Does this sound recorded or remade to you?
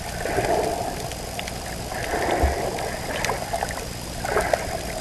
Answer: recorded